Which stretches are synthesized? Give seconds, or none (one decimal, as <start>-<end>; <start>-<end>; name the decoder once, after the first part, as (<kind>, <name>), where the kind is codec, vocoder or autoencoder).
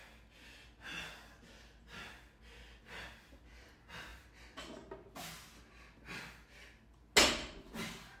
none